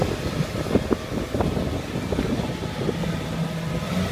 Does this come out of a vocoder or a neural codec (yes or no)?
no